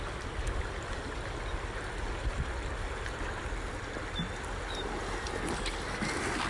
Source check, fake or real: real